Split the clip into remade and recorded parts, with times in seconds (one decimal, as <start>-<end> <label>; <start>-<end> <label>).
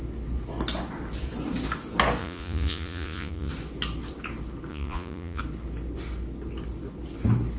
0.0-2.2 recorded; 2.2-3.5 remade; 3.5-4.7 recorded; 4.7-5.4 remade; 5.4-7.6 recorded